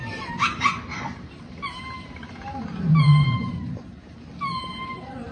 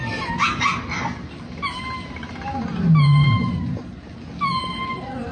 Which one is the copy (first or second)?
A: first